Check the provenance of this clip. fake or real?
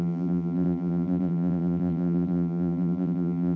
fake